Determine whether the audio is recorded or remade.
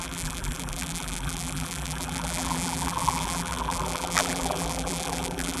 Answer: remade